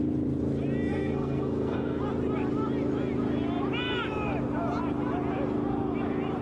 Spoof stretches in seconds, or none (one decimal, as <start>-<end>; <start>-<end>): 0.9-2.0